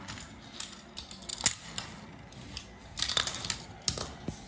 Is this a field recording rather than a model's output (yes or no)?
yes